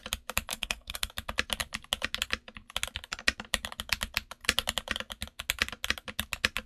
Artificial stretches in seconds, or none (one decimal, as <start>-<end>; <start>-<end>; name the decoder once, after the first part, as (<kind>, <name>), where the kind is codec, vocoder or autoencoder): 0.5-1.1 (codec, SNAC)